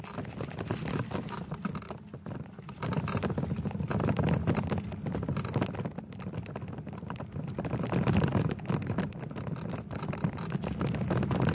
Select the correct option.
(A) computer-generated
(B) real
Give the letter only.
B